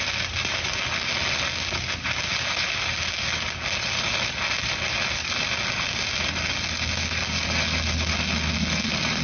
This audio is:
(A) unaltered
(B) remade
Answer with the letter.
A